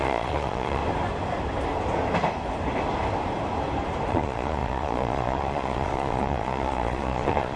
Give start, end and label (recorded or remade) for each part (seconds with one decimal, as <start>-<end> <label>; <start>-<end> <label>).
0.0-0.8 remade; 0.8-4.1 recorded; 4.1-7.6 remade